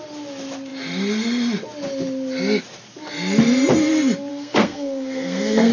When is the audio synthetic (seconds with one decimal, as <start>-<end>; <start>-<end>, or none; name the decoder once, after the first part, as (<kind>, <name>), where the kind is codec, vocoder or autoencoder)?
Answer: 4.3-5.7 (codec, SNAC)